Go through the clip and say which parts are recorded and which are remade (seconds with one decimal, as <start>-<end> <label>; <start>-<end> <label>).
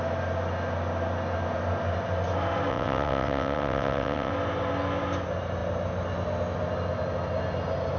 0.0-2.7 recorded; 2.7-4.3 remade; 4.3-8.0 recorded